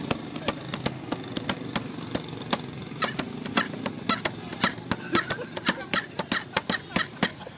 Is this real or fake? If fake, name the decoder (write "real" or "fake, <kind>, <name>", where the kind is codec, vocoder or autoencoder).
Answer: real